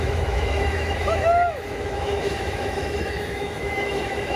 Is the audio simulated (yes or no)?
yes